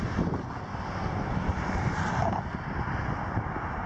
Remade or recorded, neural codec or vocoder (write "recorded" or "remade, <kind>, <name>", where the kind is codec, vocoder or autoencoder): recorded